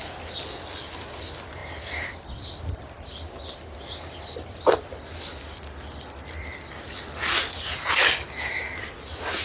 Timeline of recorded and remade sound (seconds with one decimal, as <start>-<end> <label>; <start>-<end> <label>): 0.0-9.4 recorded